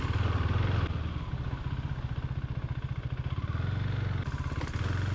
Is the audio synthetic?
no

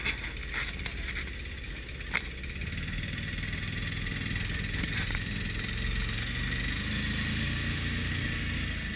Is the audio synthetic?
no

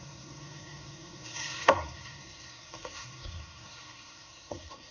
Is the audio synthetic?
yes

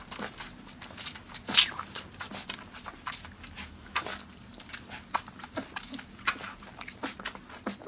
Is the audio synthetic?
no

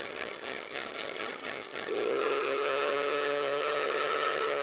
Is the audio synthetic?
yes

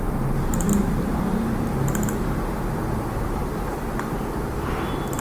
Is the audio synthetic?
no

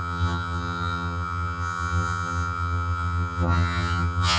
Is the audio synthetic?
yes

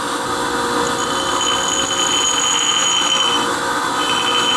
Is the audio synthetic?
no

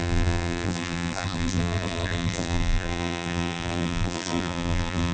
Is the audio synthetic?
yes